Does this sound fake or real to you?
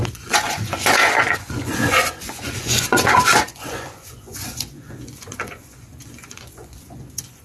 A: fake